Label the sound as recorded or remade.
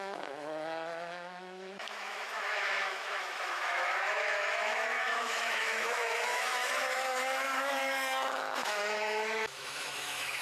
remade